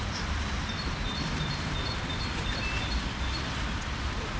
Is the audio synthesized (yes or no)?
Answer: yes